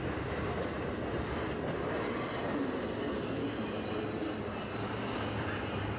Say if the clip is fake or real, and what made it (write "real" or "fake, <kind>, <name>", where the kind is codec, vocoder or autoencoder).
real